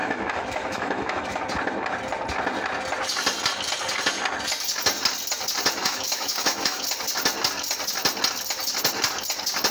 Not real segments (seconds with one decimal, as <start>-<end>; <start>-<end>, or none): 0.0-1.4; 5.8-6.8